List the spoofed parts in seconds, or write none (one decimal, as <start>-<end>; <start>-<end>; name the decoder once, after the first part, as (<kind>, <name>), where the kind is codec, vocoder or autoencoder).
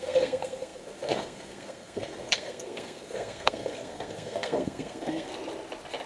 0.0-5.3 (codec, SNAC)